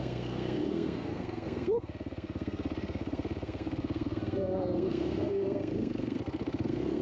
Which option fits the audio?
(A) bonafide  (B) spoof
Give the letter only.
B